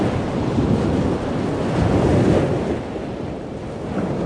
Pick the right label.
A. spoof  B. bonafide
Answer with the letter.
B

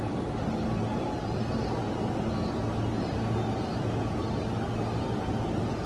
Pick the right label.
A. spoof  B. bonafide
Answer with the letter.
B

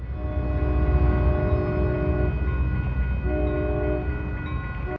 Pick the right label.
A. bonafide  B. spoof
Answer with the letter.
A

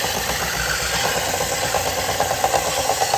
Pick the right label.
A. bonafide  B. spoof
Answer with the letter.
A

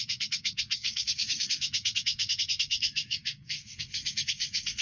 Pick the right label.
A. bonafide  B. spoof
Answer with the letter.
B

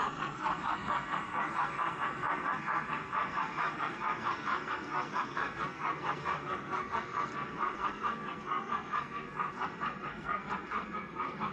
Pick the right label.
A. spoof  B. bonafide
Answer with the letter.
A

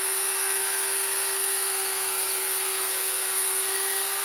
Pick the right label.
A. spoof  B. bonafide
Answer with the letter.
A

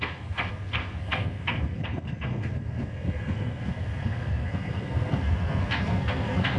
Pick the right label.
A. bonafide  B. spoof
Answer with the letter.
B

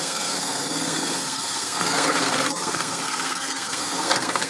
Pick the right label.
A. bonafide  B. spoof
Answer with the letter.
B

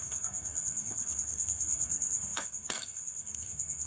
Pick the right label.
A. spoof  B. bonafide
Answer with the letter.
A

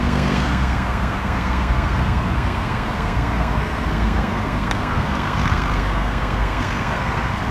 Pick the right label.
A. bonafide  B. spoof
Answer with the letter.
B